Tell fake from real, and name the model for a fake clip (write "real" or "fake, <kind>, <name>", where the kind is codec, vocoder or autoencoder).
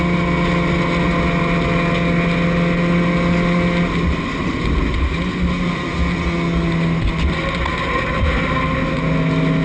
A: real